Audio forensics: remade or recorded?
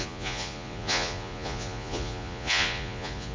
remade